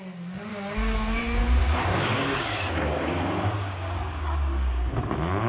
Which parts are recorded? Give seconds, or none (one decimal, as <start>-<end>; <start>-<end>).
0.0-0.5; 1.2-1.6; 4.9-5.5